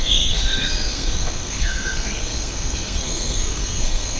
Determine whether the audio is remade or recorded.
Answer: remade